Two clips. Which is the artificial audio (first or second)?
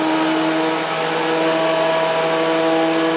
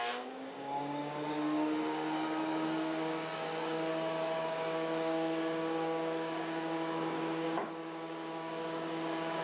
second